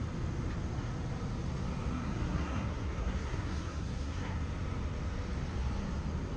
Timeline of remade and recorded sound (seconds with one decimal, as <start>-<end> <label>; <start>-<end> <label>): 0.0-1.9 recorded; 1.9-4.4 remade; 4.4-6.4 recorded